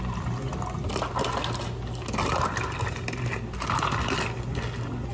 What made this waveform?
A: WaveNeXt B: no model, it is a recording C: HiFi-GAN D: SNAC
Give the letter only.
B